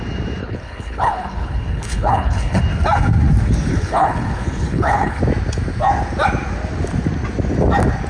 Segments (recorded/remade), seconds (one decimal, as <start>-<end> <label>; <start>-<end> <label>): 0.0-0.4 recorded; 0.4-2.6 remade; 2.6-3.7 recorded; 3.7-5.2 remade; 5.2-8.1 recorded